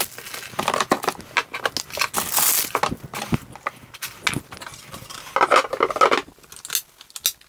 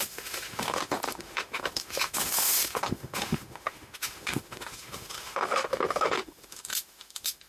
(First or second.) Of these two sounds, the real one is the first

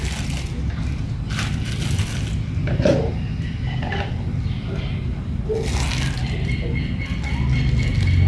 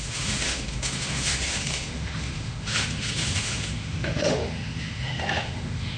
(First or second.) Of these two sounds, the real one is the first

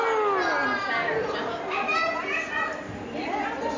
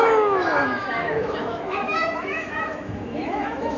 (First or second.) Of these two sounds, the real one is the first